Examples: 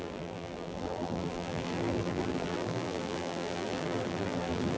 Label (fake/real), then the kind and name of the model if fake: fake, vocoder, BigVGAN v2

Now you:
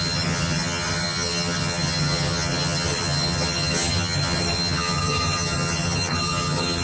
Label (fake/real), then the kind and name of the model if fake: fake, vocoder, HiFi-GAN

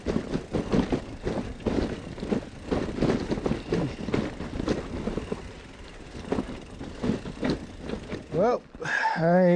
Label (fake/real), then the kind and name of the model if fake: real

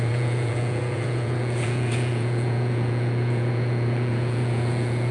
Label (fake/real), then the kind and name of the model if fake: fake, vocoder, Vocos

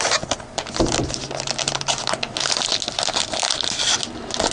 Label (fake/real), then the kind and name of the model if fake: real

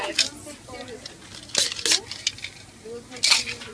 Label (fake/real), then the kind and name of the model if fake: real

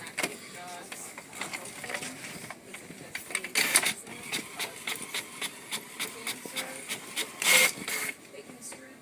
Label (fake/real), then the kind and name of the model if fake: real